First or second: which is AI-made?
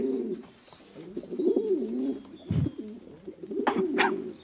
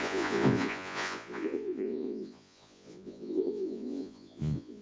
second